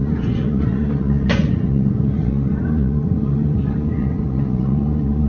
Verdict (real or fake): fake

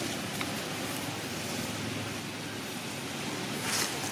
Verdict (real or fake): real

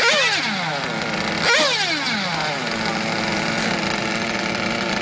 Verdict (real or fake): real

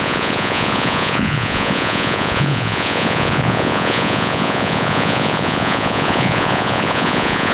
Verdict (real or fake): fake